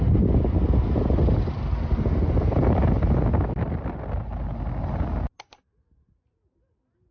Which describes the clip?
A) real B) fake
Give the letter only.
A